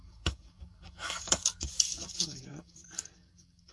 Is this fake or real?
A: fake